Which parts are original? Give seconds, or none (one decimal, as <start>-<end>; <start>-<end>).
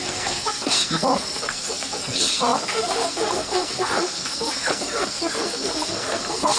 none